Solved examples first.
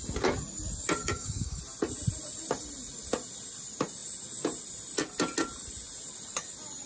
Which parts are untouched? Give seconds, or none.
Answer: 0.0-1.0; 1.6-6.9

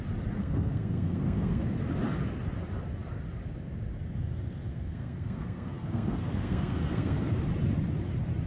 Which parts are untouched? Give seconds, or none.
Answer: 0.0-0.4; 1.7-4.7; 7.4-8.5